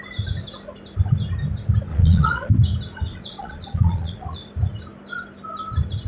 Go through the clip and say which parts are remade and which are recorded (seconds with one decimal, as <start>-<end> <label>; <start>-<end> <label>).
0.0-1.9 recorded; 1.9-2.5 remade; 2.5-3.1 recorded; 3.1-4.5 remade; 4.5-6.1 recorded